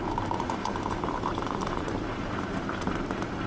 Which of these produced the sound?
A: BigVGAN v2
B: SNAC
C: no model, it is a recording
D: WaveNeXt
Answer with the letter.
A